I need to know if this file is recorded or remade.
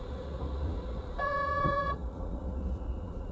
remade